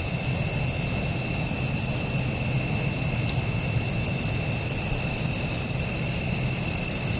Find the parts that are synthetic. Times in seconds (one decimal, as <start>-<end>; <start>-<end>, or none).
none